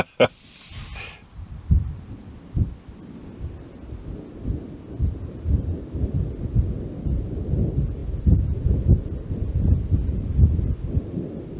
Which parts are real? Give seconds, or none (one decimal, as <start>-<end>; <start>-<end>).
0.0-11.6